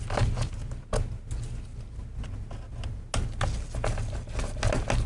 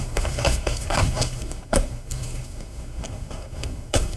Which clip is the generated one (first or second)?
second